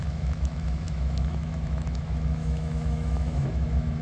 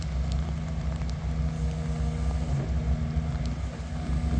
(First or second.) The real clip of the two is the second